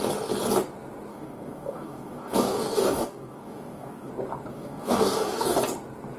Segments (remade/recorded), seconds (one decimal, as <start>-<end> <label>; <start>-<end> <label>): 0.0-1.1 recorded; 1.1-4.1 remade; 4.1-4.5 recorded; 4.5-5.6 remade; 5.6-6.2 recorded